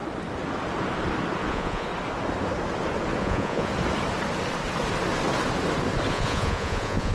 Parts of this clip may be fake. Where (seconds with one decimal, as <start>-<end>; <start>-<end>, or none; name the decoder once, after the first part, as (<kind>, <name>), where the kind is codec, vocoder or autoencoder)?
1.5-1.9 (vocoder, Vocos); 3.2-3.7; 6.1-7.1